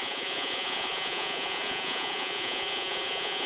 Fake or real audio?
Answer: fake